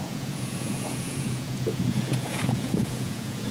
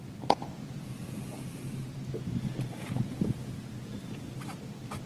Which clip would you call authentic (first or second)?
second